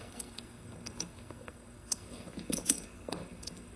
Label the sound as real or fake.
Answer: fake